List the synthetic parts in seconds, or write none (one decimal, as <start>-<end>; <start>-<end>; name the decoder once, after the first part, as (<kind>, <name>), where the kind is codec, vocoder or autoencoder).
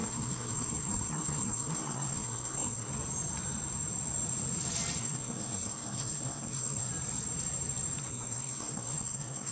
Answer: 0.0-2.9 (codec, SNAC); 5.0-6.9; 8.0-9.5